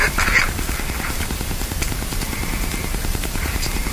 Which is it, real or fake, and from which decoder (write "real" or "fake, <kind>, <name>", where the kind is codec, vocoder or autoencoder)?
fake, vocoder, BigVGAN v2